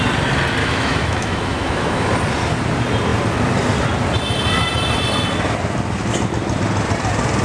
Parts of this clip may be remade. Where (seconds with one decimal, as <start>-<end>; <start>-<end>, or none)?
0.6-2.1